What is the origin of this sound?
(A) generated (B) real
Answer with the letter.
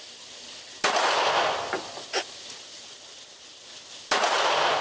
B